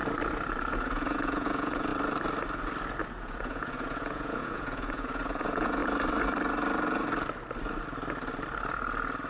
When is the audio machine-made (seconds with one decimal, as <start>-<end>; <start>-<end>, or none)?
0.7-1.9; 3.1-5.8